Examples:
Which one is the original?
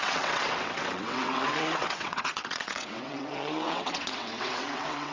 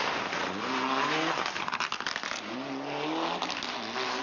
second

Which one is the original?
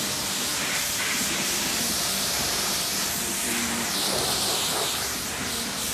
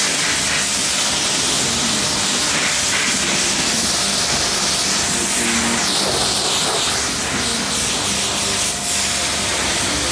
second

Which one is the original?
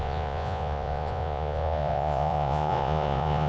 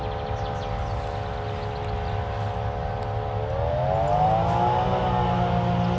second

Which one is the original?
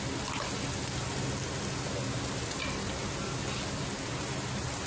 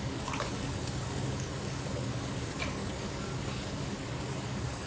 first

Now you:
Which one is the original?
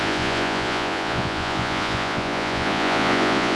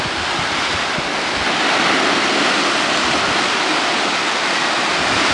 second